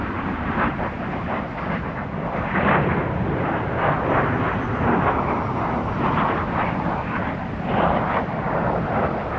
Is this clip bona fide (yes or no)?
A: yes